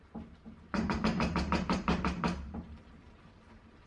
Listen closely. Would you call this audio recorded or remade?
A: remade